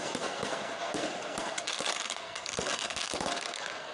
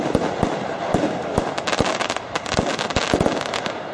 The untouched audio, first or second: second